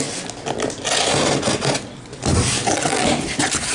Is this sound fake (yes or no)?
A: no